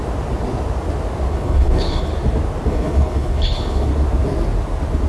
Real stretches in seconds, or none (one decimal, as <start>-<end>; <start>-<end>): 0.0-1.3; 2.1-2.7; 3.9-5.1